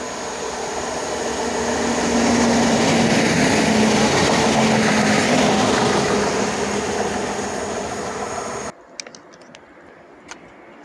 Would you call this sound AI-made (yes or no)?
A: no